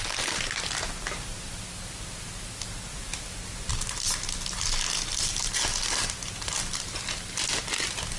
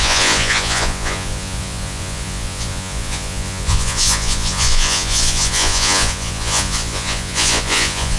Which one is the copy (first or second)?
second